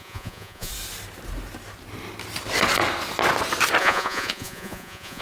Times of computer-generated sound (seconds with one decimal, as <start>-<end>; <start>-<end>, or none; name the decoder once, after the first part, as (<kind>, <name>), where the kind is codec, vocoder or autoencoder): 0.0-0.7 (vocoder, Vocos); 3.8-5.2